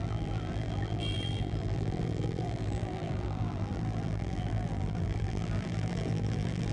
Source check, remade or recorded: remade